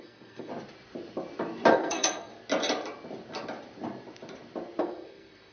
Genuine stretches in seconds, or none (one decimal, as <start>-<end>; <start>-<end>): 0.5-1.7; 2.3-4.8